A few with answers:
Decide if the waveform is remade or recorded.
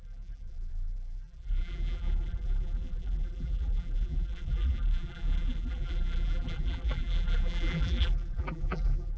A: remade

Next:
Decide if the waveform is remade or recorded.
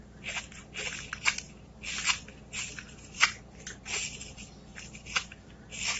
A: recorded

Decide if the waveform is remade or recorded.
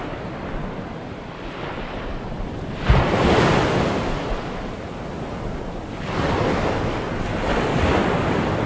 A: remade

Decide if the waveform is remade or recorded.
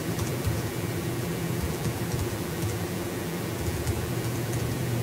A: remade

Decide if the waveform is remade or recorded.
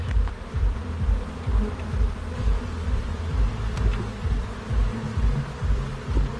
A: remade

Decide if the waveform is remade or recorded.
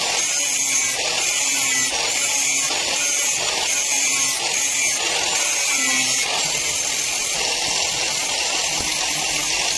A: recorded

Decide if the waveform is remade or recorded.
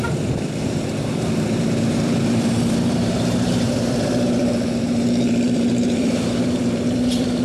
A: remade